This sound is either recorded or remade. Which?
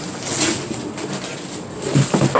recorded